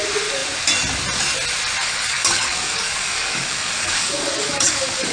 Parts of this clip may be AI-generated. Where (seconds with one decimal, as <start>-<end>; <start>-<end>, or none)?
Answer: 1.8-5.1